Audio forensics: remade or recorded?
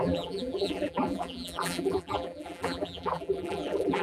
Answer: remade